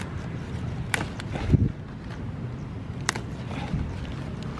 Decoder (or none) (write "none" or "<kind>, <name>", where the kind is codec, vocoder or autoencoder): none